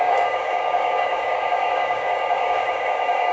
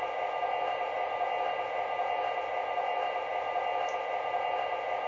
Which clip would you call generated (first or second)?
first